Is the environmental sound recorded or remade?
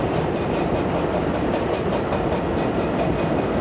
remade